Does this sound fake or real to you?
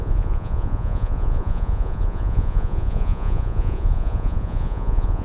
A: fake